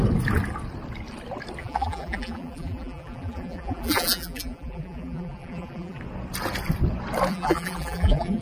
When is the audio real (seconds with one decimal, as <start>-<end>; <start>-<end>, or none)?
0.0-1.6; 6.0-7.3